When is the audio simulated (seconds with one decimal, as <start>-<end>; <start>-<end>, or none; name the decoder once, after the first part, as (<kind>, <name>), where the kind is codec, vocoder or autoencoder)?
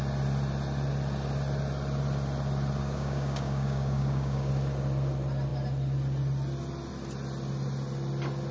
2.8-4.5 (codec, DAC)